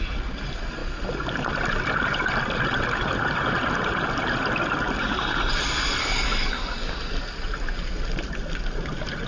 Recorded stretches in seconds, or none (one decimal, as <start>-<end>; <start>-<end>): 0.0-6.0; 6.9-9.3